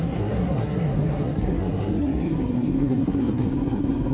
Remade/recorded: remade